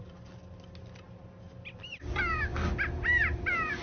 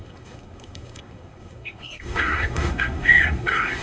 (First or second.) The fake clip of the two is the second